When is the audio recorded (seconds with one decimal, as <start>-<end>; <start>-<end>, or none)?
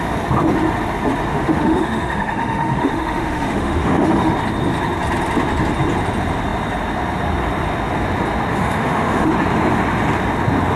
0.0-1.3; 4.3-8.5; 9.3-10.8